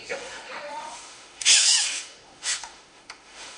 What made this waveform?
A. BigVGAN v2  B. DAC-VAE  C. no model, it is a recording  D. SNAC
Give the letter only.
B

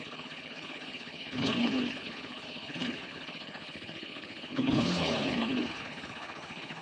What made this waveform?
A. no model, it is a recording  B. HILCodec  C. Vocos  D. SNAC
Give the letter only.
B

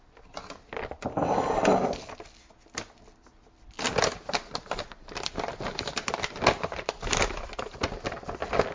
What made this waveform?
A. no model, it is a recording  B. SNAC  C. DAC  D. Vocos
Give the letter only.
A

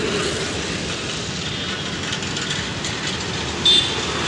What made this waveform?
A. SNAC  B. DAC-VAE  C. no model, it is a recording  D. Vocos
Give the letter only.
C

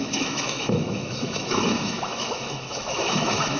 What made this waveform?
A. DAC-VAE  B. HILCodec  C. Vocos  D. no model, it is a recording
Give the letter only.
A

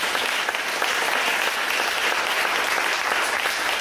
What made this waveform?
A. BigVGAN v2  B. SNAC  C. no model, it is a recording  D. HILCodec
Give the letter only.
C